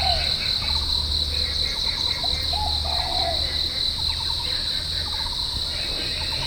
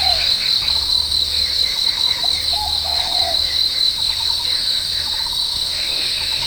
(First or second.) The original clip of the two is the first